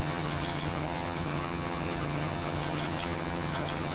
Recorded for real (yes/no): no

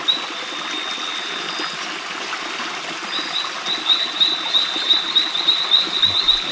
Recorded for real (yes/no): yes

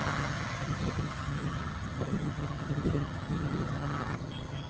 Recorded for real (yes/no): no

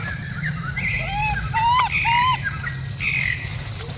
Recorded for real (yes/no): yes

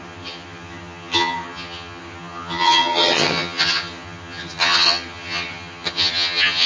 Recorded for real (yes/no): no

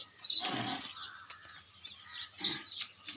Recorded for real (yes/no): yes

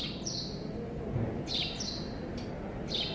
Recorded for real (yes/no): yes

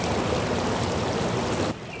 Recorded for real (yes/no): yes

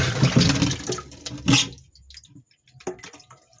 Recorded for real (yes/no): yes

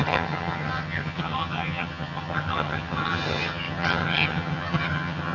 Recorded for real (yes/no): no